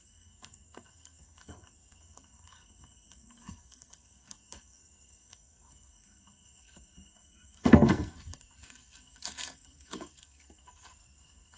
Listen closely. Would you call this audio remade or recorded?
remade